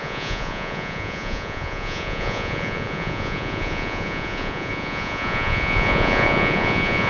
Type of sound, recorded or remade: remade